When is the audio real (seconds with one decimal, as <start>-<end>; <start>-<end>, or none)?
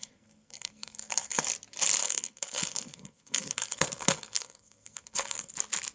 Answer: 1.5-2.0; 5.5-5.9